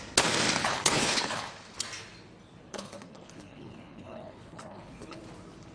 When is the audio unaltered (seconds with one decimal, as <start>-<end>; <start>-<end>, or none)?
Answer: 0.0-0.6; 1.5-2.7; 5.2-5.7

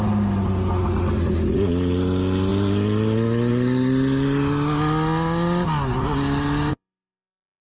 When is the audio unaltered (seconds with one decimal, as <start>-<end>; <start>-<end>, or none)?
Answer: 0.0-6.7

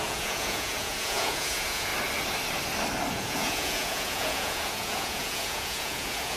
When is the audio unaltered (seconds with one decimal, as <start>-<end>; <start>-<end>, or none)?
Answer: 1.9-3.1

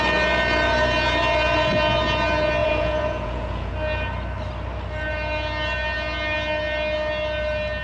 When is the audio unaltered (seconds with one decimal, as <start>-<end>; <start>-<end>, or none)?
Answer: 0.0-2.6; 3.7-7.8